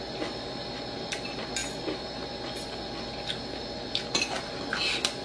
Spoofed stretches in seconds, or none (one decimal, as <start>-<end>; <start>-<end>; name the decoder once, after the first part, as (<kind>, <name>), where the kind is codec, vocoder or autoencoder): none